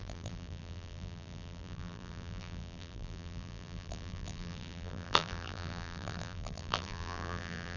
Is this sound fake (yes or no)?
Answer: yes